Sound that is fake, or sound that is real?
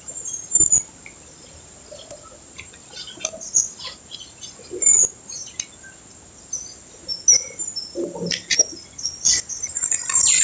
real